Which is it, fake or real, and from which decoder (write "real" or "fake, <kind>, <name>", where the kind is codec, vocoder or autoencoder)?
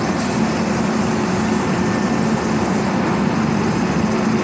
real